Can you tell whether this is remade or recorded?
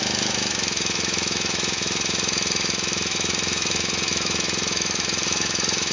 remade